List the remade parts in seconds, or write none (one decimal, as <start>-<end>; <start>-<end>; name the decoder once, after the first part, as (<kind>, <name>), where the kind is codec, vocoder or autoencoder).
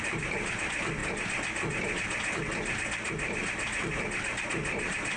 none